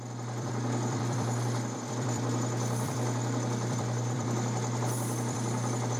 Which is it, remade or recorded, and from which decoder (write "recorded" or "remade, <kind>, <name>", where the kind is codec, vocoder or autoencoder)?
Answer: remade, vocoder, BigVGAN v2